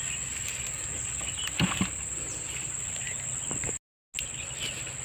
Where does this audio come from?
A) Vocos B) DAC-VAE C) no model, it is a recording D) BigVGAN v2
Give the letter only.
C